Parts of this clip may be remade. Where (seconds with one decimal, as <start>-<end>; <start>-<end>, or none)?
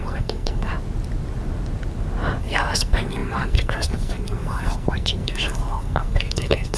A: 0.0-0.7; 2.4-6.8